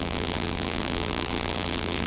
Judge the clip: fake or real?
fake